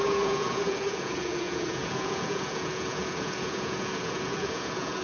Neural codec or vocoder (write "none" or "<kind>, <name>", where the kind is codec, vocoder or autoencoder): vocoder, Vocos